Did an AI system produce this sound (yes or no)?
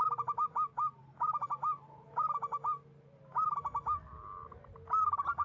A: no